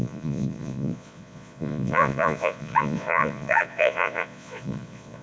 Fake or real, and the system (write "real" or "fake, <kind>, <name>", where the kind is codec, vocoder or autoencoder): fake, vocoder, Vocos